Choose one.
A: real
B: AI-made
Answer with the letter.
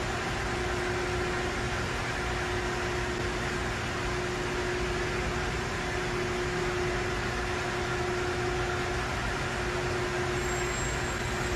A